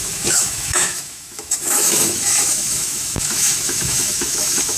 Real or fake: fake